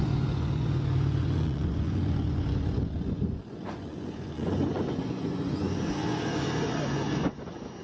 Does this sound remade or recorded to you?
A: remade